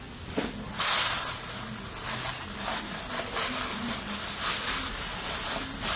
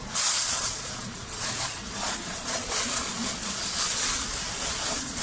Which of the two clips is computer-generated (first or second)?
second